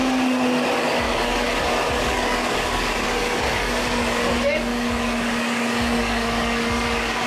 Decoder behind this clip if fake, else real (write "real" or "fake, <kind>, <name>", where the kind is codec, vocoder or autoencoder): fake, codec, DAC